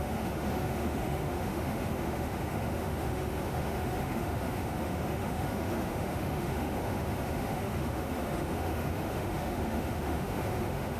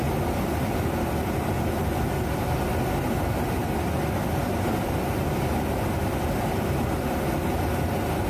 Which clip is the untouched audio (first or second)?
second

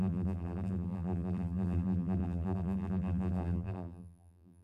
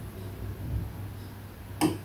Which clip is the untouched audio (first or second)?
second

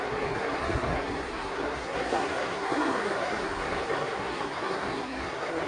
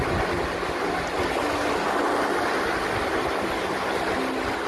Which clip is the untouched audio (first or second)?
second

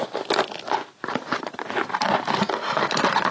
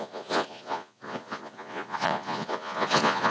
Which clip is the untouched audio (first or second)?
first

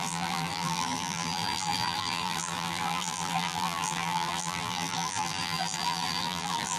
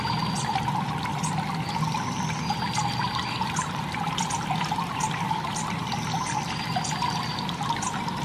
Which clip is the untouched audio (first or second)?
second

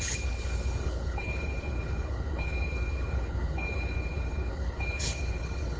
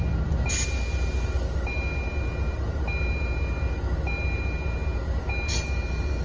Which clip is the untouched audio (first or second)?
second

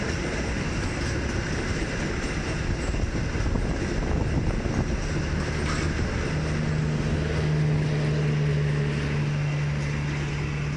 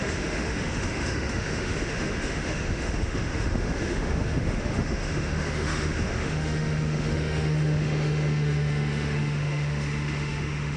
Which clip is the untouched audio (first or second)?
first